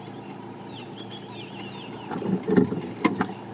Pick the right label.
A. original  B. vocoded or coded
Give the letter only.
A